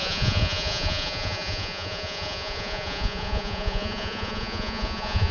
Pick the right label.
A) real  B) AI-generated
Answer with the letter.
B